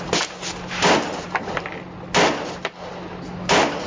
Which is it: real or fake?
real